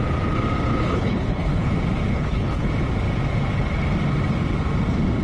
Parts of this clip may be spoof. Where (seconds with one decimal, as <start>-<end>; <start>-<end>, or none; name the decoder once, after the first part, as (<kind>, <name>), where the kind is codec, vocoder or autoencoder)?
0.8-1.7 (codec, HILCodec); 2.1-2.7